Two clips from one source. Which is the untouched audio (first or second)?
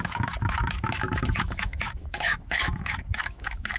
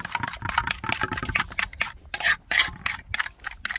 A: second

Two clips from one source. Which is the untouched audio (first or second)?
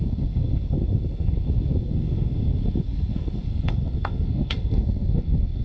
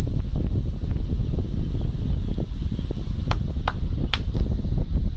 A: second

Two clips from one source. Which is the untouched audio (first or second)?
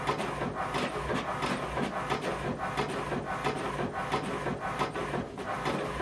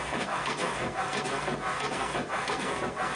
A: first